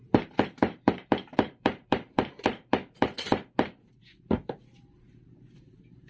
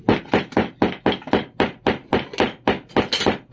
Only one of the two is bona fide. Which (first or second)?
second